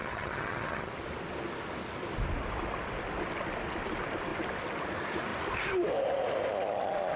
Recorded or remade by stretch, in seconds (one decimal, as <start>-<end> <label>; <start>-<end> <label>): 0.0-0.9 remade; 0.9-7.2 recorded